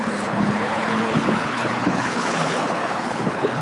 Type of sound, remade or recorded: remade